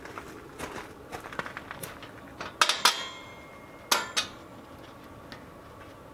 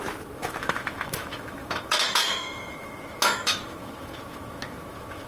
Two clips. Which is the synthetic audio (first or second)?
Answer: second